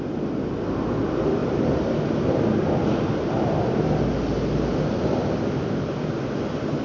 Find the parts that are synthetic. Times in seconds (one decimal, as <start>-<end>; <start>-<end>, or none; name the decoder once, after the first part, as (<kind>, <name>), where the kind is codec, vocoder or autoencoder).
none